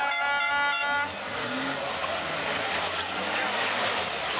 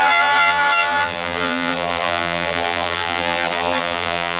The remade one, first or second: second